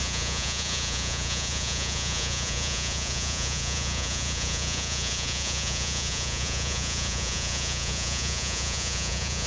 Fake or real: fake